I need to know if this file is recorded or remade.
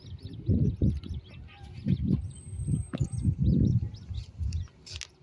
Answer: recorded